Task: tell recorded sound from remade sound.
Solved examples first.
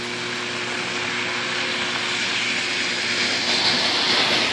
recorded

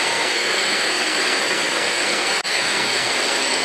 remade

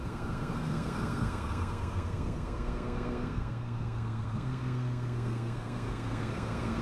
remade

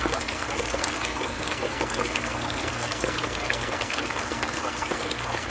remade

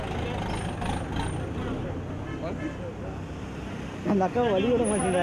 recorded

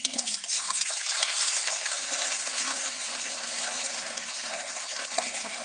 remade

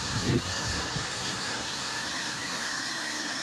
remade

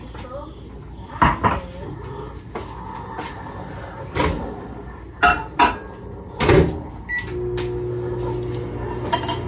recorded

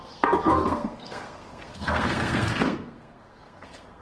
remade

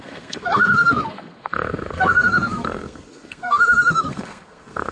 remade